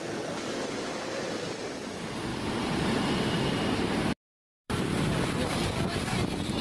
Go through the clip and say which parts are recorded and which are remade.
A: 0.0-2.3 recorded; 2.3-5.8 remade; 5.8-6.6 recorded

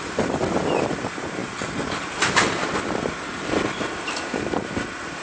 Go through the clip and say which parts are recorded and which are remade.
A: 0.0-0.5 remade; 0.5-5.2 recorded

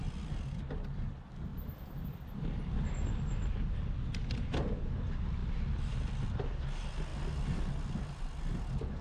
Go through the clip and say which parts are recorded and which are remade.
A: 0.0-1.5 recorded; 1.5-2.9 remade; 2.9-9.0 recorded

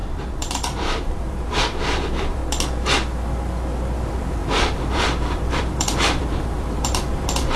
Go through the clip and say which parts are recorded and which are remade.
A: 0.0-2.4 remade; 2.4-4.0 recorded; 4.0-7.6 remade

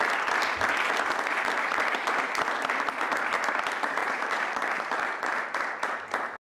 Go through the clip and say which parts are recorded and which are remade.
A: 0.0-4.0 recorded; 4.0-5.6 remade; 5.6-6.5 recorded

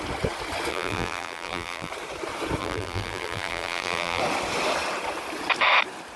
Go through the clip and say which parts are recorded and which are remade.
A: 0.0-0.7 recorded; 0.7-1.9 remade; 1.9-2.6 recorded; 2.6-4.2 remade; 4.2-6.2 recorded

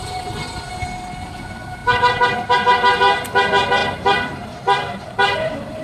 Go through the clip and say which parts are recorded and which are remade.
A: 0.0-1.8 recorded; 1.8-2.5 remade; 2.5-3.8 recorded; 3.8-5.8 remade